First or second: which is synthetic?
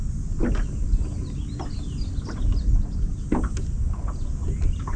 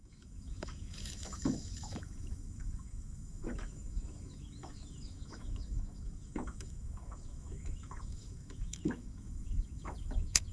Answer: second